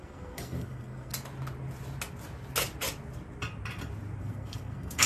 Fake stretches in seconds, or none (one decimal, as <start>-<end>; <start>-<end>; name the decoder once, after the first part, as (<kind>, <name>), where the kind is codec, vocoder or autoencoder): 0.0-1.1 (codec, SNAC); 4.2-5.1